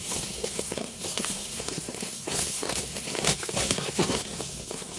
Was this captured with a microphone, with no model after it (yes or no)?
no